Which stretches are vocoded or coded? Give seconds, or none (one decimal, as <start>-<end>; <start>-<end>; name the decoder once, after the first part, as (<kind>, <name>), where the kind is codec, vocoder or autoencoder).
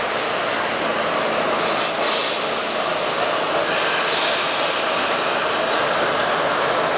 none